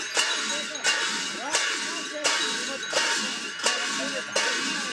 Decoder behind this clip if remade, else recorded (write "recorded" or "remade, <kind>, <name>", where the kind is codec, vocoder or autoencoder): recorded